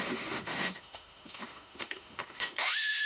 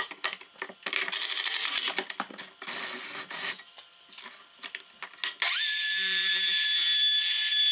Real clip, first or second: second